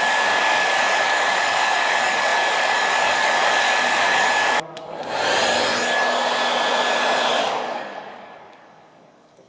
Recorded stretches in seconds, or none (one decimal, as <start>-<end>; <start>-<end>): 5.0-7.3

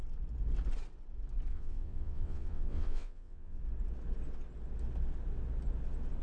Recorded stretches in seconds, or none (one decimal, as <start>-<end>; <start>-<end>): 0.0-1.5; 3.6-6.2

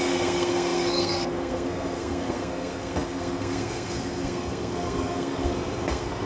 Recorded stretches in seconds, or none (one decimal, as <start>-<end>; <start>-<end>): none